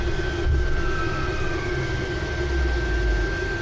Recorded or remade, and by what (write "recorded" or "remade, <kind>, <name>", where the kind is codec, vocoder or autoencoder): recorded